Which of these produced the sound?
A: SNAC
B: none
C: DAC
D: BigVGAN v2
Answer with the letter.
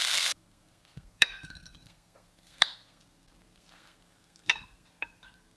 A